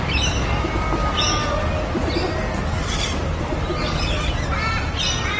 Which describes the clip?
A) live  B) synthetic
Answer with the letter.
A